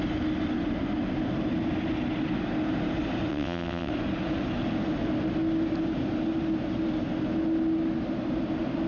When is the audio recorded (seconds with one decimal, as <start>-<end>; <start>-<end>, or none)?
0.0-3.3; 3.9-8.9